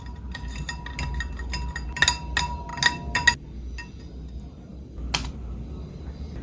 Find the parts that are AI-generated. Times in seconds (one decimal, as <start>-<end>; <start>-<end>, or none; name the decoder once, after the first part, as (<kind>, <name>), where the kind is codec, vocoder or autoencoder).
none